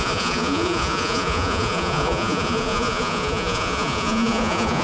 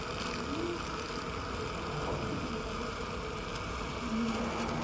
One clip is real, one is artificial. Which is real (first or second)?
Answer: second